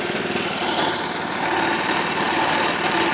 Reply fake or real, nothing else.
fake